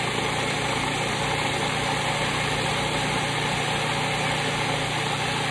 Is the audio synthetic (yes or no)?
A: no